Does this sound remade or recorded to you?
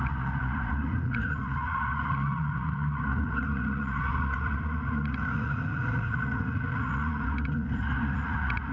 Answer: remade